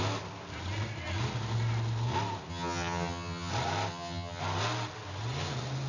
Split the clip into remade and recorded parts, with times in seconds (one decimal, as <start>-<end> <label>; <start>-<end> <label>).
0.0-2.5 recorded; 2.5-3.5 remade; 3.5-3.9 recorded; 3.9-4.4 remade; 4.4-5.9 recorded